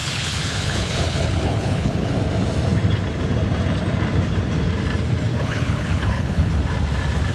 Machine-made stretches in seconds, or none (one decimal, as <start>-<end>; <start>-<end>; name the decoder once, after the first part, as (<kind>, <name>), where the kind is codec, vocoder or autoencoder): 0.0-2.1 (codec, HILCodec); 5.3-6.5